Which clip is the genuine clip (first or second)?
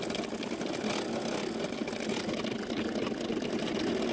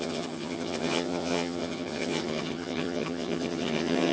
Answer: first